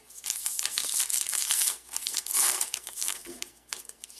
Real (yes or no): no